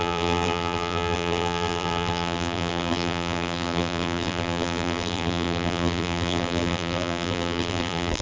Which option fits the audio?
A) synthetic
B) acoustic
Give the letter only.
A